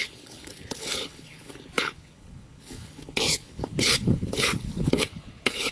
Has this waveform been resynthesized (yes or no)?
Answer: yes